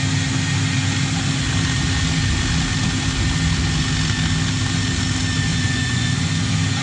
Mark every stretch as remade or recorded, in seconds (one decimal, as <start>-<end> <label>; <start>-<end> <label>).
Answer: 0.0-5.5 recorded; 5.5-6.3 remade; 6.3-6.8 recorded